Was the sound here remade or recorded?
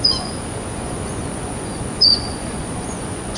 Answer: remade